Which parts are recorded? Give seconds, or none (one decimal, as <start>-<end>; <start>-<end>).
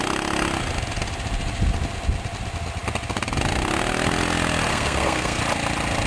0.0-4.7; 5.4-6.1